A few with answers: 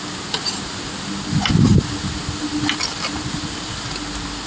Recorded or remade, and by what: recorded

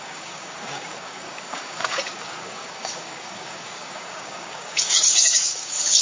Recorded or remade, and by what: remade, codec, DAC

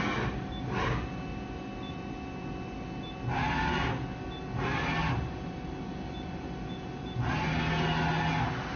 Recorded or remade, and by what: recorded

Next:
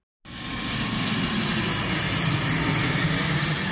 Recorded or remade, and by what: recorded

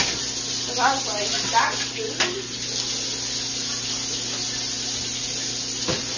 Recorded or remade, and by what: recorded